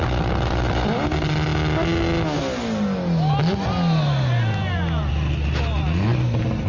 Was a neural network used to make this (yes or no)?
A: no